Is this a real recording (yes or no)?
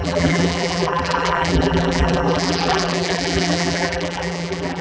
no